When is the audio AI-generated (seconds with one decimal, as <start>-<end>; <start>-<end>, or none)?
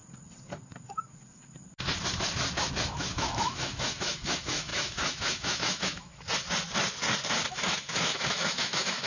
2.8-6.1; 7.5-9.1